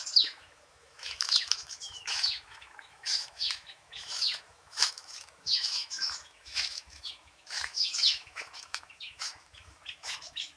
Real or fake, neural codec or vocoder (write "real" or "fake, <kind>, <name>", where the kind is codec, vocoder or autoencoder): fake, autoencoder, DAC-VAE